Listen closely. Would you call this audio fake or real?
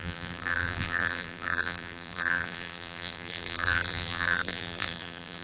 fake